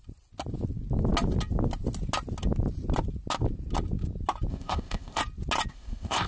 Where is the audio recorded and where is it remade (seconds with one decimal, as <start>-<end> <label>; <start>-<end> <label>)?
0.0-4.5 recorded; 4.5-5.2 remade; 5.2-5.7 recorded; 5.7-6.3 remade